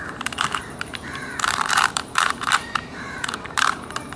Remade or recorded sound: remade